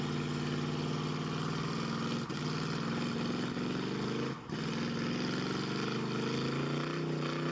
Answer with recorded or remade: recorded